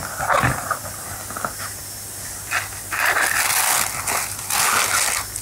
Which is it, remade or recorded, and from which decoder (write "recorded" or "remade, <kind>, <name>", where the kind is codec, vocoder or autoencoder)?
recorded